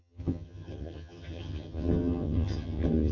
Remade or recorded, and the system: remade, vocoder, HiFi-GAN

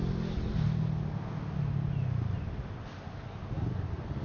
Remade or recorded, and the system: recorded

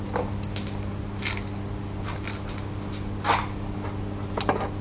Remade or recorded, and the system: recorded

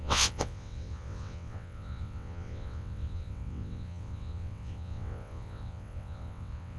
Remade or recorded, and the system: remade, vocoder, WaveNeXt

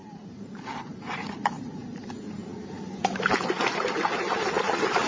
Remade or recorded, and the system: recorded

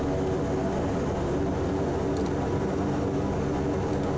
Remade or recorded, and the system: recorded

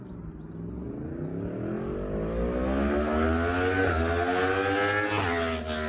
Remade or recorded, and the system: recorded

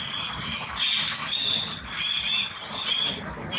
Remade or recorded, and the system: recorded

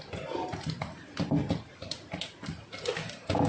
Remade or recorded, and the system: recorded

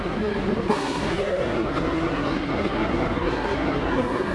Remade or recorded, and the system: remade, codec, SNAC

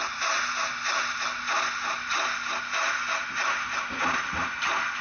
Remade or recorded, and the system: recorded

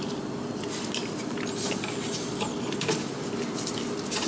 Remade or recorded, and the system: recorded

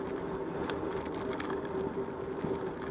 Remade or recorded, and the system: recorded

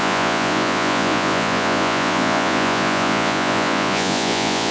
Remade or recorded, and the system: remade, vocoder, Vocos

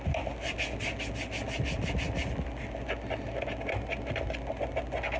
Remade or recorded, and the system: recorded